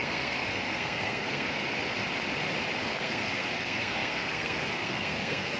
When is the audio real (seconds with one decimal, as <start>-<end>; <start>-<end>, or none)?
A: 1.6-2.8